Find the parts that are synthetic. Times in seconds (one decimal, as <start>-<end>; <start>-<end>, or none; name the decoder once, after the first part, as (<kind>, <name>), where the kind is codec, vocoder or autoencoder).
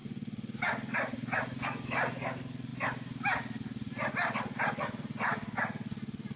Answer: none